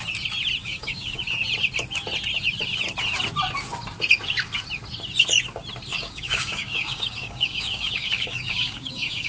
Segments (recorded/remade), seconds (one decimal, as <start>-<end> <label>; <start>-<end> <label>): 0.0-0.6 recorded; 0.6-1.2 remade; 1.2-5.9 recorded; 5.9-9.3 remade